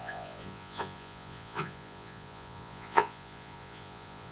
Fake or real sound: fake